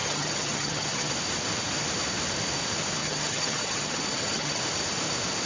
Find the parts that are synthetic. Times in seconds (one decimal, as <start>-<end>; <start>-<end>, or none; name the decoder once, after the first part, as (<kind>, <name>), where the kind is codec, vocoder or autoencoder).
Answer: 0.0-1.1 (vocoder, HiFi-GAN); 3.0-4.6